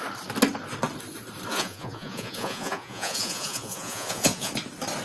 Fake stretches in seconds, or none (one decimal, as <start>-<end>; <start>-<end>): 1.5-4.5